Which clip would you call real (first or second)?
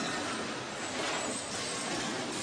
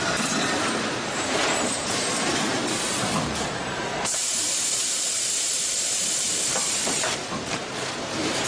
first